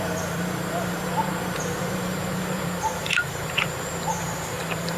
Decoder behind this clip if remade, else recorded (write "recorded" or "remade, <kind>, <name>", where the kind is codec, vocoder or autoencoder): remade, vocoder, BigVGAN v2